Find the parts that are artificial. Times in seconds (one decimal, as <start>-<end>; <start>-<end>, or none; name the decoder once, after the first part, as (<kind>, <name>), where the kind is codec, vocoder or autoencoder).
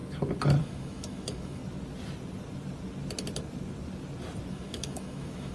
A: 0.6-1.6 (autoencoder, DAC-VAE); 4.5-5.5